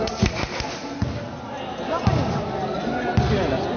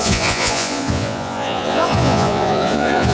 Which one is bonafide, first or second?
first